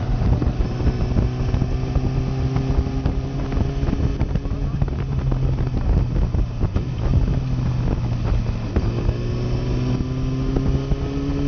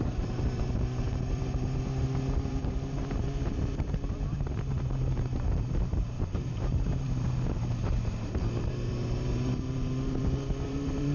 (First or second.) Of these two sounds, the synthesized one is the second